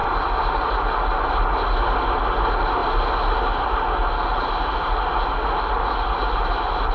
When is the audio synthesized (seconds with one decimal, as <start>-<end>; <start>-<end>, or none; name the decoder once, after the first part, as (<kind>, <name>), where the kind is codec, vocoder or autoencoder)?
none